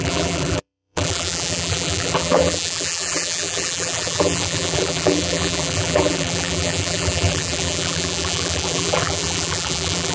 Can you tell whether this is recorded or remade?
remade